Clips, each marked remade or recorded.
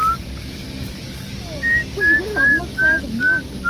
remade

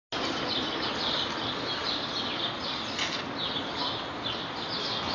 recorded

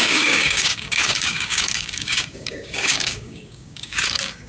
remade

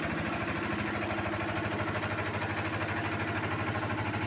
recorded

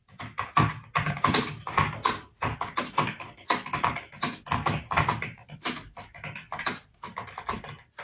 recorded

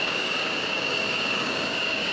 remade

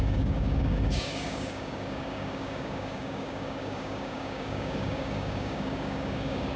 remade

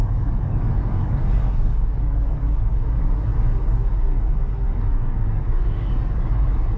remade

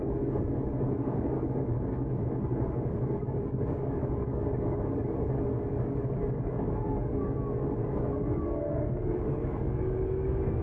remade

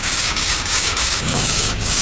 remade